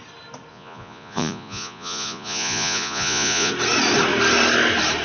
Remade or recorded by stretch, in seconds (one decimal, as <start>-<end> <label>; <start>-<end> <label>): 0.0-0.5 recorded; 0.5-3.5 remade; 3.5-5.0 recorded